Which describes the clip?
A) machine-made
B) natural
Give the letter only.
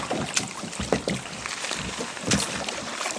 B